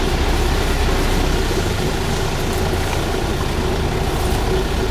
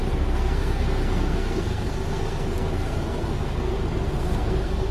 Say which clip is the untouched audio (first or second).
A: first